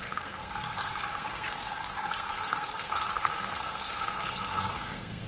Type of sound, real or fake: fake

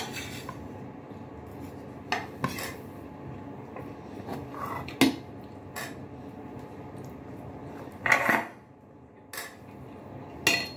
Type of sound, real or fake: real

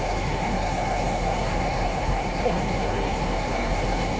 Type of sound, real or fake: fake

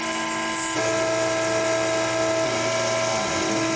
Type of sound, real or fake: real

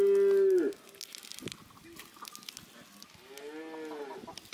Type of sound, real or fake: real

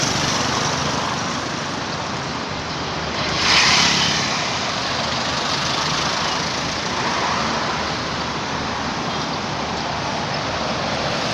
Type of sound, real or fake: fake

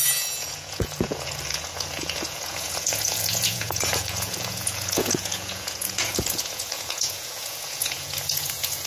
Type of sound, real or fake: fake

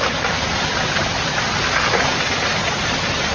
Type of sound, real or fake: real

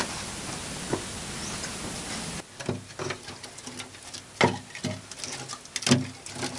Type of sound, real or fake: real